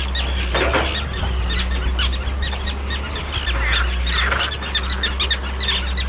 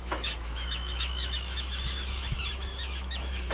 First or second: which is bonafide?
first